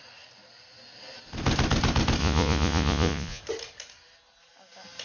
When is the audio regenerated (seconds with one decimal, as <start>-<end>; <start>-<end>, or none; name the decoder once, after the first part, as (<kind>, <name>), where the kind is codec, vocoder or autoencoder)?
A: 2.2-3.4 (vocoder, Vocos)